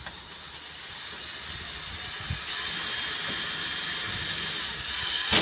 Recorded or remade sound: recorded